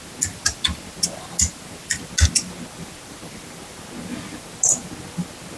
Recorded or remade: recorded